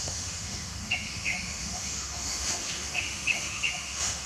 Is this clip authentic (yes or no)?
no